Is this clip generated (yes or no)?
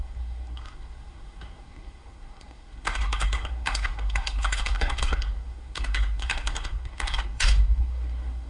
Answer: yes